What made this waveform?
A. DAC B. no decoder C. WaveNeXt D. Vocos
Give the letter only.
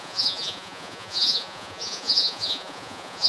D